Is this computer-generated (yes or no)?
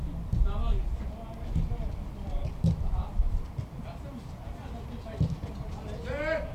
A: no